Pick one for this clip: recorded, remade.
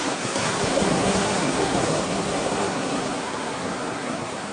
remade